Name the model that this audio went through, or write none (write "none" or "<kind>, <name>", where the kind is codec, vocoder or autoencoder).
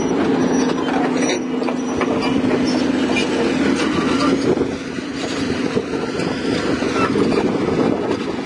none